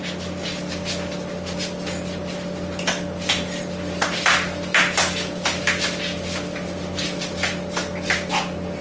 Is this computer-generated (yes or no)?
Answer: no